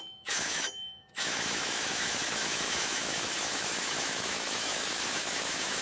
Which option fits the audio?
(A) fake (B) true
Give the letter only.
A